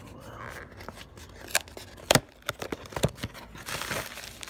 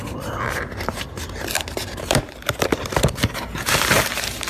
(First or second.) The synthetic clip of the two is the second